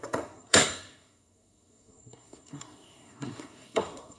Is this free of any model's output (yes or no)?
no